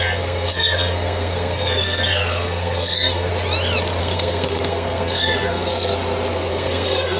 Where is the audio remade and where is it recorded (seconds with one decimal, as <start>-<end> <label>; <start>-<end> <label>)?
0.0-3.3 remade; 3.3-4.0 recorded; 4.0-5.9 remade; 5.9-6.5 recorded; 6.5-7.2 remade